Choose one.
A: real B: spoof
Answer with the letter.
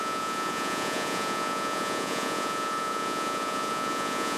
B